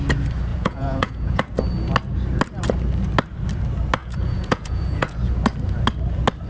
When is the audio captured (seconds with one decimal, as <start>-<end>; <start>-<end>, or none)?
0.0-0.5; 1.5-4.0; 5.3-6.5